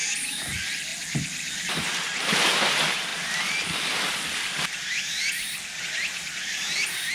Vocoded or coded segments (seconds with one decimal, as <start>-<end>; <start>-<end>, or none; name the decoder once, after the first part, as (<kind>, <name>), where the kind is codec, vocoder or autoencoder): none